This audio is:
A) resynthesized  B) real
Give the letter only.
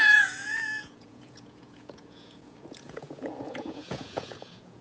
A